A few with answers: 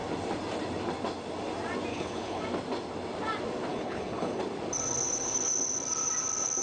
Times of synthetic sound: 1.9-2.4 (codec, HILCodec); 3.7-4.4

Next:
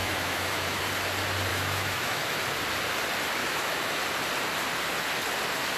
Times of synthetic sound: 0.0-0.8 (autoencoder, DAC-VAE); 1.5-2.4; 3.4-4.0